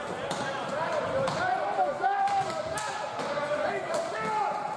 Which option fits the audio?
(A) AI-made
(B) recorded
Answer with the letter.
B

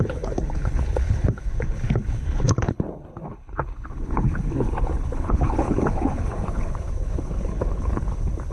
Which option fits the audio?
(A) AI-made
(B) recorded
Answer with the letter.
A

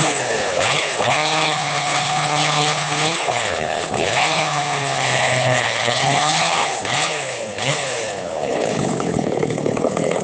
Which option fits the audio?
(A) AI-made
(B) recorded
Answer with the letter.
A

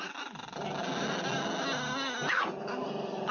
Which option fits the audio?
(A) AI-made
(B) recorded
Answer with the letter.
B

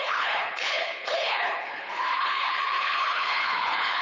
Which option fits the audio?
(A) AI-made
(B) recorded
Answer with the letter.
A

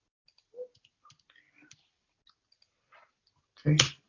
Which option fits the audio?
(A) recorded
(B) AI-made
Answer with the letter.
A